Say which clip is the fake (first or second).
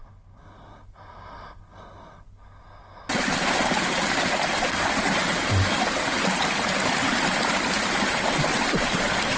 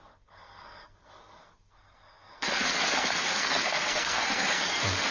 second